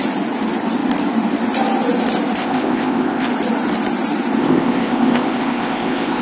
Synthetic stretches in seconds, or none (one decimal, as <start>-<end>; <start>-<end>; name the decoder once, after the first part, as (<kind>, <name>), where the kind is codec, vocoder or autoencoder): 2.4-3.3 (codec, ZipCodec); 4.4-6.2